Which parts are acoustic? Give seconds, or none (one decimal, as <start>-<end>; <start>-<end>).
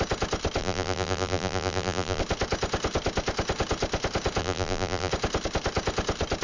0.0-0.6; 2.2-4.4; 5.1-6.4